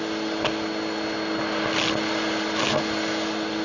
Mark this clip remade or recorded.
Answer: recorded